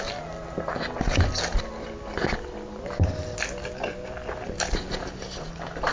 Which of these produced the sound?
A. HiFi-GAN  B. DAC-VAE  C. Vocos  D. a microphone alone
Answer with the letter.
D